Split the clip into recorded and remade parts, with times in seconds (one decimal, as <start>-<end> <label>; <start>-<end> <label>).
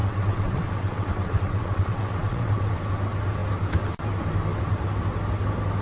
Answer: 0.0-2.7 remade; 2.7-5.8 recorded